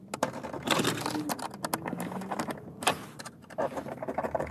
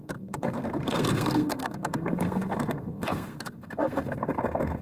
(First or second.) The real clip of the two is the first